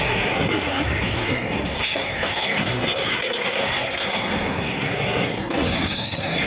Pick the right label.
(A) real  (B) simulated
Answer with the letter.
B